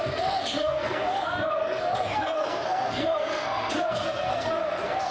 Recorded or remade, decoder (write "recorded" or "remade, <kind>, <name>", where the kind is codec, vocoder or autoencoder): remade, codec, SNAC